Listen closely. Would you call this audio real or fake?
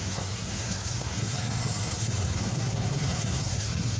fake